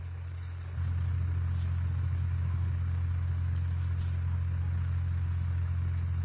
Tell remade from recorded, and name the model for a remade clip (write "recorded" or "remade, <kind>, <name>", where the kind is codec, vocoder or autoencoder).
recorded